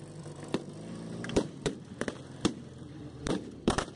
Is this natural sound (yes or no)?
no